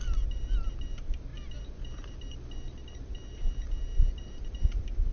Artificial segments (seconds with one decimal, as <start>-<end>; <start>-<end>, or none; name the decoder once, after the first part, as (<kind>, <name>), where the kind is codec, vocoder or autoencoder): none